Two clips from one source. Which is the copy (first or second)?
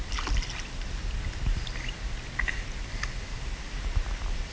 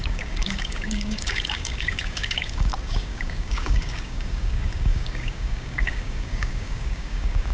second